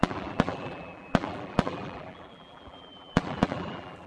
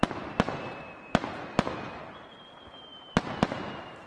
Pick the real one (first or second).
second